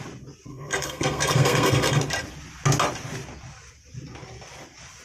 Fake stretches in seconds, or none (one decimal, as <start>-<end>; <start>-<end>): 0.5-2.0